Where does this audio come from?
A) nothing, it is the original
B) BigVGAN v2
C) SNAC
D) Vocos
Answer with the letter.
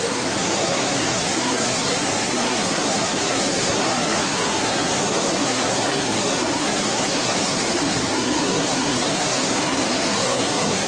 C